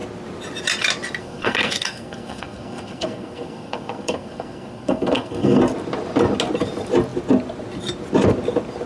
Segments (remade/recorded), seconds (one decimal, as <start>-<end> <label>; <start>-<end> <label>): 0.0-1.2 recorded; 1.2-5.6 remade; 5.6-8.9 recorded